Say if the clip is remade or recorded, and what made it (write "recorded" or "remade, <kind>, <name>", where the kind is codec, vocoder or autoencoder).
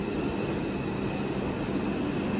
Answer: recorded